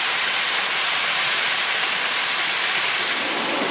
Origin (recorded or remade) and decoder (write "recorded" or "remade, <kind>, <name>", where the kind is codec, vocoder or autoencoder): recorded